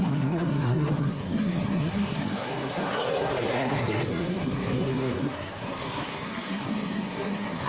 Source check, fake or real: fake